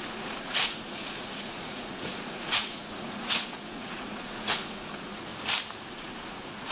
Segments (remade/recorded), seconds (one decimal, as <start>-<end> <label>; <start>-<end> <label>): 0.0-5.3 remade; 5.3-5.9 recorded; 5.9-6.7 remade